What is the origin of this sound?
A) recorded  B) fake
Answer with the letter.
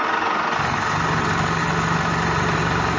A